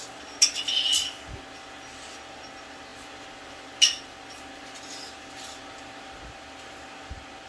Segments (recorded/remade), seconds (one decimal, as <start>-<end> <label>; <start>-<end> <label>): 0.0-7.5 recorded